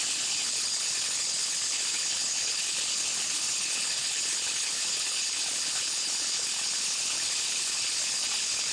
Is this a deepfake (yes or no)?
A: yes